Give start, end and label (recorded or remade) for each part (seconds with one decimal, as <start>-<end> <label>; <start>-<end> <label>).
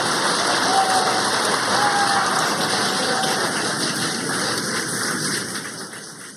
0.0-6.4 recorded